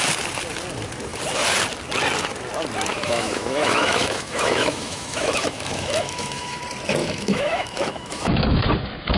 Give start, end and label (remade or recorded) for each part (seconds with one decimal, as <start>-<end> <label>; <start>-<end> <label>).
0.0-2.9 recorded; 2.9-6.6 remade; 6.6-7.0 recorded; 7.0-8.7 remade; 8.7-9.2 recorded